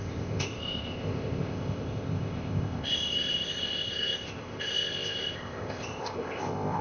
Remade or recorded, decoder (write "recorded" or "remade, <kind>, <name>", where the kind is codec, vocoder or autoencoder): remade, codec, ZipCodec